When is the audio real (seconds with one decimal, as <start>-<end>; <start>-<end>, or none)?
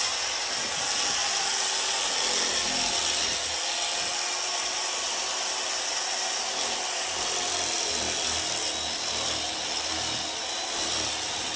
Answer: 0.0-11.6